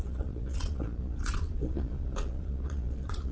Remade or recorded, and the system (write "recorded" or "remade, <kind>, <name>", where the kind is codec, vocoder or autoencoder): remade, vocoder, Vocos